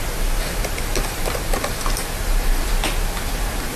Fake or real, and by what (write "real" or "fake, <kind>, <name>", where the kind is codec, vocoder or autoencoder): real